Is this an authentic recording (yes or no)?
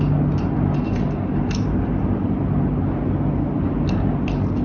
yes